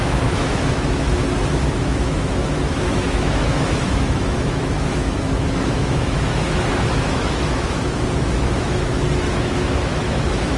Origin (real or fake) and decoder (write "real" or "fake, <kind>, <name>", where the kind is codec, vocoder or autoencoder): fake, autoencoder, DAC-VAE